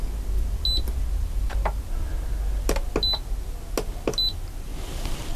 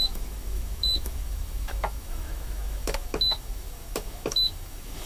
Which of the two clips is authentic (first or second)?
first